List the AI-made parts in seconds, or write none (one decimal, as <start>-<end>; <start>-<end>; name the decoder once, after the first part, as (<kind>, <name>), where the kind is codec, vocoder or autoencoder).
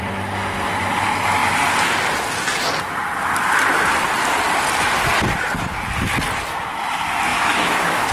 7.3-8.1 (autoencoder, DAC-VAE)